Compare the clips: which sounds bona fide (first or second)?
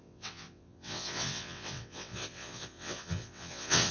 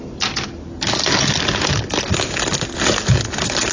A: second